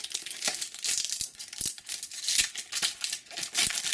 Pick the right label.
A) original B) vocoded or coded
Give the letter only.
A